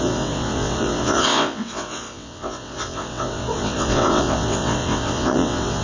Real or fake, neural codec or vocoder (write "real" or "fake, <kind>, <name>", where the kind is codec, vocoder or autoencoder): fake, vocoder, WaveNeXt